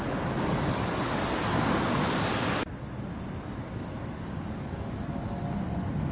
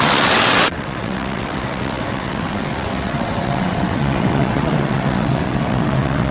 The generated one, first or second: second